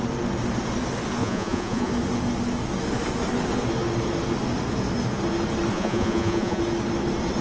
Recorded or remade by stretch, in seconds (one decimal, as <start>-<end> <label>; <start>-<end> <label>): 0.0-1.2 recorded; 1.2-1.9 remade; 1.9-5.7 recorded; 5.7-6.6 remade; 6.6-7.4 recorded